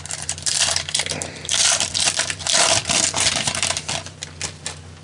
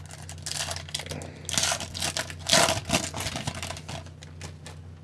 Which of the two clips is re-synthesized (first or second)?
first